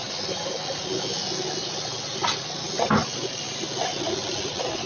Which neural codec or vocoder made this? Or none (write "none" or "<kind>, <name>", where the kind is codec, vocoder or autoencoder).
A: none